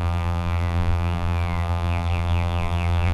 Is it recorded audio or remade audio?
remade